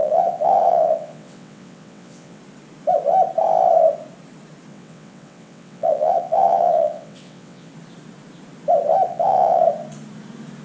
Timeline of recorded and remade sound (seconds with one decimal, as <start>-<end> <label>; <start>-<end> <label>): 0.0-2.4 remade; 2.4-4.7 recorded; 4.7-7.7 remade; 7.7-9.1 recorded; 9.1-9.6 remade; 9.6-10.6 recorded

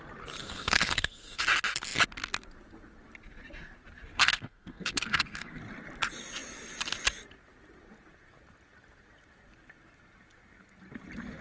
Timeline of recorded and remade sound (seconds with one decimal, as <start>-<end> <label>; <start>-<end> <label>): 0.0-0.4 recorded; 0.4-1.4 remade; 1.4-4.1 recorded; 4.1-5.6 remade; 5.6-11.4 recorded

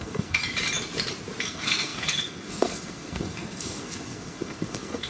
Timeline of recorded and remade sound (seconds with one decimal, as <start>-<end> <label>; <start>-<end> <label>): 0.0-0.4 remade; 0.4-1.4 recorded; 1.4-5.1 remade